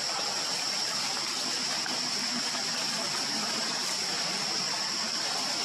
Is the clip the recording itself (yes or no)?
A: yes